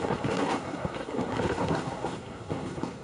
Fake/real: fake